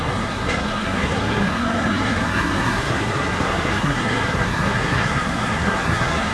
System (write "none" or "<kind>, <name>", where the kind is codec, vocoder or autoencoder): codec, SNAC